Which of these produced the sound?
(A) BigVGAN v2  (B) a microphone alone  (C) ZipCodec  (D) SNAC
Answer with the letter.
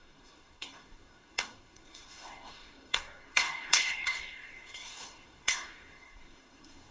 D